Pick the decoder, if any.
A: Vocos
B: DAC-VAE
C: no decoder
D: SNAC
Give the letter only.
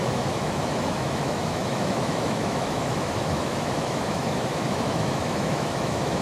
B